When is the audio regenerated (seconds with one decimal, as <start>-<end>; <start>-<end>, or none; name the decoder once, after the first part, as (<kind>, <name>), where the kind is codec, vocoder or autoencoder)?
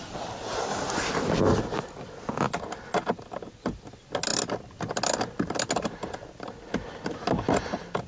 none